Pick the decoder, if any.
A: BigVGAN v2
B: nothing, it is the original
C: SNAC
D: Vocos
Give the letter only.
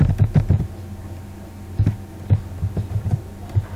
B